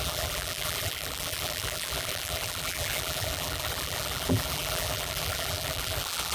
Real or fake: fake